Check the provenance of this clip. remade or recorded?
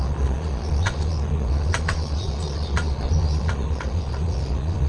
remade